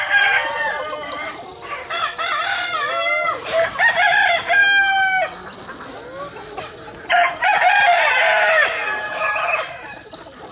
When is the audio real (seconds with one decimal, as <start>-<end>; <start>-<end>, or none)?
1.5-3.4; 4.6-7.1